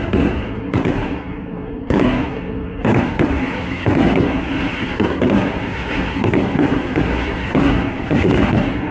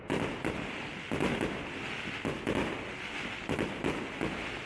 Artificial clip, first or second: first